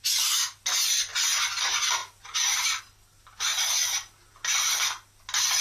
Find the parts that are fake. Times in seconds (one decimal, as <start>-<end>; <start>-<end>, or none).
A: none